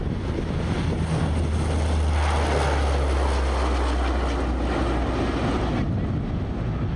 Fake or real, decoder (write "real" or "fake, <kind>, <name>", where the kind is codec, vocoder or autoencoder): real